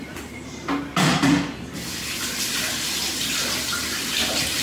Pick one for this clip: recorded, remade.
remade